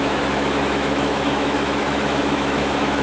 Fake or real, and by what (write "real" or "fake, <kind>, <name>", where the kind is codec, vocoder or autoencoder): fake, autoencoder, DAC-VAE